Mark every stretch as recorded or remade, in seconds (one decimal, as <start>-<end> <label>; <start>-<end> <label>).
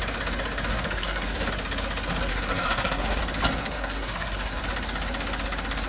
0.0-0.7 recorded; 0.7-1.5 remade; 1.5-2.3 recorded; 2.3-3.2 remade; 3.2-3.6 recorded; 3.6-4.6 remade; 4.6-5.9 recorded